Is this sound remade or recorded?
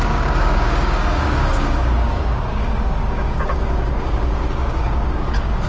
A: remade